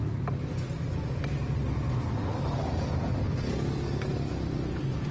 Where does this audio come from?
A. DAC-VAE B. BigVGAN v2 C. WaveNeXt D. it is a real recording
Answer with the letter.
D